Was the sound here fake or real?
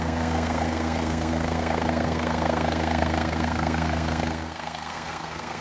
fake